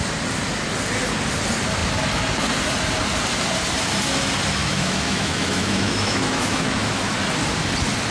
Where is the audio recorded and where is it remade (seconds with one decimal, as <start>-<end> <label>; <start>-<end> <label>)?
0.0-4.6 recorded; 4.6-7.0 remade; 7.0-8.1 recorded

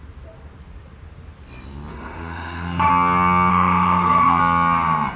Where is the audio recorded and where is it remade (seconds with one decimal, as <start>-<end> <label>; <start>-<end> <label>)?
0.0-1.9 recorded; 1.9-2.9 remade; 2.9-3.5 recorded; 3.5-4.4 remade; 4.4-5.2 recorded

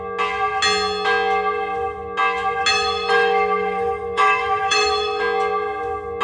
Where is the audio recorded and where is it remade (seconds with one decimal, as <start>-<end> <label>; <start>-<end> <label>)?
0.0-2.7 recorded; 2.7-5.2 remade; 5.2-6.2 recorded

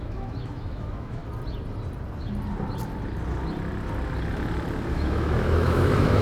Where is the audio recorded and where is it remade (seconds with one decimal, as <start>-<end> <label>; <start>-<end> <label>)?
0.0-1.2 remade; 1.2-4.9 recorded; 4.9-6.2 remade

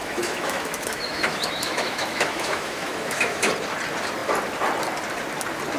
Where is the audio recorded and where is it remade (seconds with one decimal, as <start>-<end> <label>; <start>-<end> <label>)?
0.0-3.5 remade; 3.5-5.8 recorded

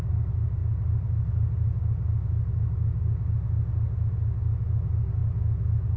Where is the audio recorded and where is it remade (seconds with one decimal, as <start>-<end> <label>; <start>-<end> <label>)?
0.0-6.0 recorded

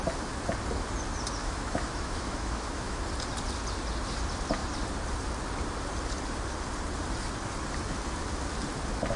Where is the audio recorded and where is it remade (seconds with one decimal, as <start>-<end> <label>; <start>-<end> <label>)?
0.0-1.4 recorded; 1.4-3.0 remade; 3.0-9.2 recorded